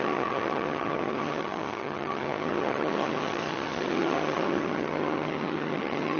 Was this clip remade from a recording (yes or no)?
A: yes